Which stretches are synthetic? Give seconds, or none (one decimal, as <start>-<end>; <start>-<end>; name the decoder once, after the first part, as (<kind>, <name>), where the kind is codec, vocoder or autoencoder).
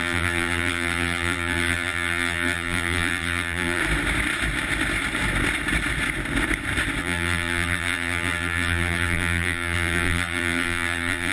0.0-3.8 (vocoder, BigVGAN v2); 7.0-11.3